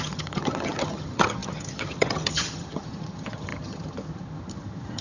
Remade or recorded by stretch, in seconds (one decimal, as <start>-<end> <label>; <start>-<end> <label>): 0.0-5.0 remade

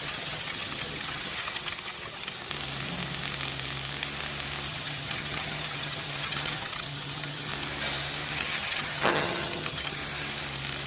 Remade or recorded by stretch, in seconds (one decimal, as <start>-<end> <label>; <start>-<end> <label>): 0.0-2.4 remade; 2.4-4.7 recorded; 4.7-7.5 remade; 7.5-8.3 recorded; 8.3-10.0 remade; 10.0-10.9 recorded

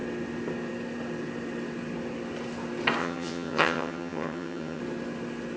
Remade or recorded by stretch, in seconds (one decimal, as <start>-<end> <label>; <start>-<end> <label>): 0.0-3.0 recorded; 3.0-4.8 remade; 4.8-5.6 recorded

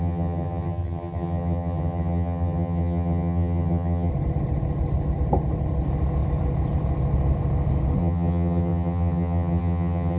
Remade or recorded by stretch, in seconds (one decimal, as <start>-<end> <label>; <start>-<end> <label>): 0.0-4.1 remade; 4.1-8.0 recorded; 8.0-10.2 remade

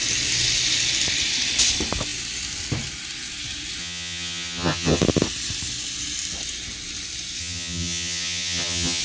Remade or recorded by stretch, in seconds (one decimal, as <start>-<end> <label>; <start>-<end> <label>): 0.0-3.8 recorded; 3.8-5.0 remade; 5.0-7.4 recorded; 7.4-9.0 remade

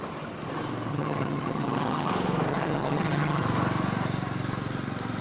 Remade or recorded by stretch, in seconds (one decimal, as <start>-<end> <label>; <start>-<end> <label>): 0.0-0.9 recorded; 0.9-2.1 remade; 2.1-2.5 recorded; 2.5-3.4 remade; 3.4-5.2 recorded

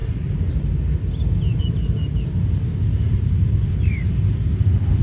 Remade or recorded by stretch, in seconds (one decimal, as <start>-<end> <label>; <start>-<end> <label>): 0.0-5.0 recorded

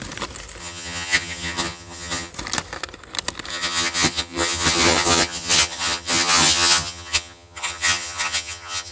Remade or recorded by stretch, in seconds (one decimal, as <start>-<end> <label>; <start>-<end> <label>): 0.0-0.6 recorded; 0.6-2.3 remade; 2.3-3.5 recorded; 3.5-8.9 remade